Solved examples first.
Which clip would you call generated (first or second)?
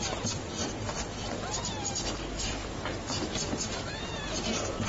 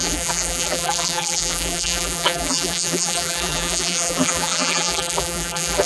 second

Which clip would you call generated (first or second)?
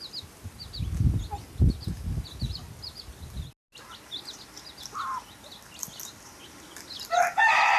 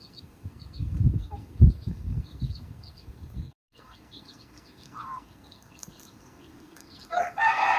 second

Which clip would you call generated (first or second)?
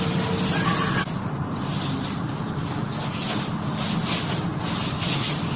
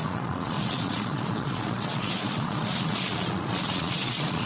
second